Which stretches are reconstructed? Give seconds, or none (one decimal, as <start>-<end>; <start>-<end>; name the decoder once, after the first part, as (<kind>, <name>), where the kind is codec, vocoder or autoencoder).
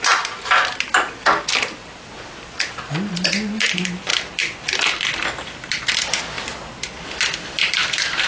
none